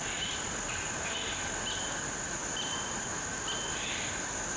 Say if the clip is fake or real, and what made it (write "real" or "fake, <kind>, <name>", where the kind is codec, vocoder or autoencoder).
real